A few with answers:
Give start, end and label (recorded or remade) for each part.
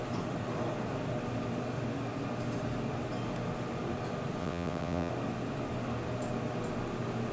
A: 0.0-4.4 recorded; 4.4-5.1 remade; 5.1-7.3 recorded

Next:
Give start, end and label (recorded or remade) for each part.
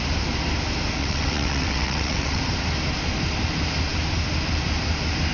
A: 0.0-1.0 recorded; 1.0-2.4 remade; 2.4-5.3 recorded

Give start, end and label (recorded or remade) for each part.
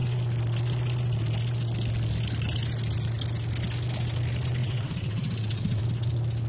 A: 0.0-4.6 recorded; 4.6-5.8 remade; 5.8-6.5 recorded